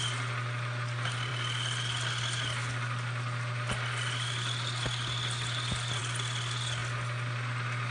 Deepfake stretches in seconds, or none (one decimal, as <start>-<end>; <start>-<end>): none